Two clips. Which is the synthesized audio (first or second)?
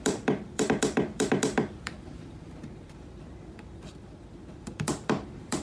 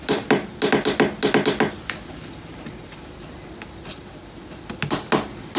first